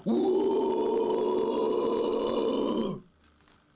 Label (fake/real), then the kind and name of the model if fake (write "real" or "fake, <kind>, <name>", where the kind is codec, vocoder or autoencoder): real